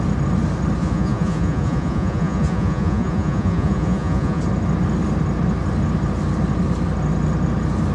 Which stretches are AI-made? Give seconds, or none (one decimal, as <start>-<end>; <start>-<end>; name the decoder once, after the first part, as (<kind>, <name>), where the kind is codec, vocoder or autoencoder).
0.8-4.4 (vocoder, Vocos)